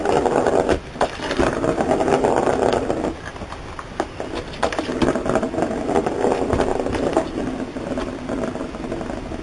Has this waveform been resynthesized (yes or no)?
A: no